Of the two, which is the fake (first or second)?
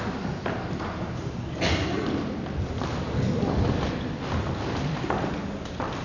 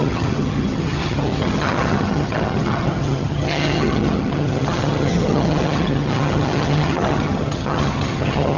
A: second